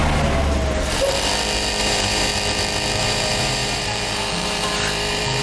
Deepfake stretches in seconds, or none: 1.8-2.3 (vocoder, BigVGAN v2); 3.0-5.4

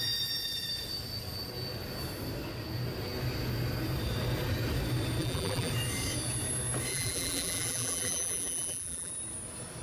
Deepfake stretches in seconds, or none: 5.2-5.7 (vocoder, BigVGAN v2); 6.9-9.1

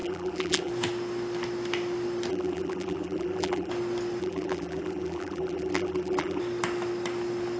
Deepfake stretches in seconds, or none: 0.0-0.7 (vocoder, BigVGAN v2); 2.3-3.7; 4.2-6.4

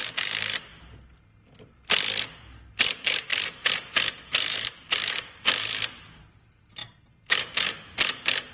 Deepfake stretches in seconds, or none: 0.0-0.7 (vocoder, BigVGAN v2); 2.8-6.8; 7.4-8.5

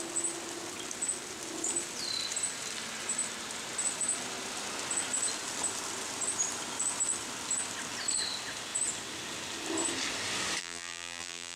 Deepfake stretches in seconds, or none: 10.6-11.6 (vocoder, BigVGAN v2)